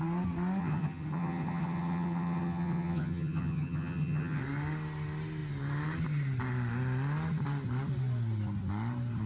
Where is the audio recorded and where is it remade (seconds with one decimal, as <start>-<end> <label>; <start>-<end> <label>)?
0.0-0.6 recorded; 0.6-4.4 remade; 4.4-9.3 recorded